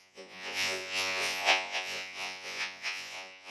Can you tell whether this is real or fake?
fake